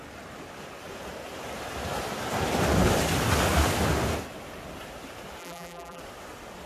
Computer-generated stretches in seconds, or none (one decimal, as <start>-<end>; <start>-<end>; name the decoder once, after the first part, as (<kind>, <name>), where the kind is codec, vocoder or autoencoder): 5.4-6.0 (vocoder, BigVGAN v2)